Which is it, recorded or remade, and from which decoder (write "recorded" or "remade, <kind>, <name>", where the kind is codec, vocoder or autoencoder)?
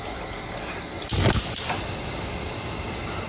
recorded